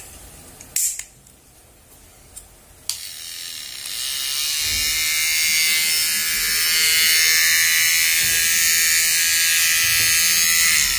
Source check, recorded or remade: recorded